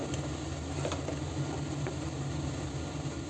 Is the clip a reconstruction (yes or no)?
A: no